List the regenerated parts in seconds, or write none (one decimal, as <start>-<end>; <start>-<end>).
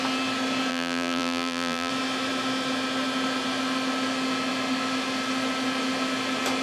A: 0.7-1.9